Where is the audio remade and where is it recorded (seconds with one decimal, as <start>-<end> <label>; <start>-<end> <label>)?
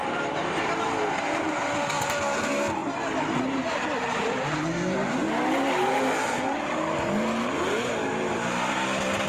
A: 0.0-0.6 recorded; 0.6-3.9 remade; 3.9-4.6 recorded; 4.6-5.0 remade; 5.0-8.3 recorded; 8.3-9.3 remade